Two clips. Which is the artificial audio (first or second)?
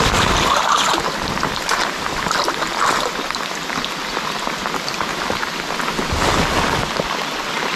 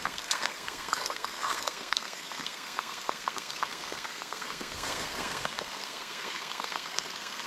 second